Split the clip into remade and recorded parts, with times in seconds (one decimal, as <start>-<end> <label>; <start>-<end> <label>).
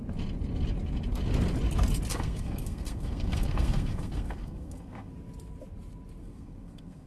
0.0-2.1 recorded; 2.1-5.1 remade; 5.1-6.2 recorded; 6.2-7.1 remade